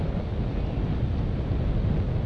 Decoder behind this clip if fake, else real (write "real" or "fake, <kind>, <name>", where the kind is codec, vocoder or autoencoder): real